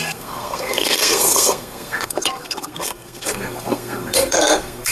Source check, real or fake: fake